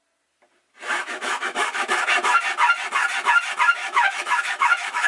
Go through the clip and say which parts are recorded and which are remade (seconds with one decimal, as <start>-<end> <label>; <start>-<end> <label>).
0.0-1.0 recorded; 1.0-2.1 remade; 2.1-3.8 recorded; 3.8-5.1 remade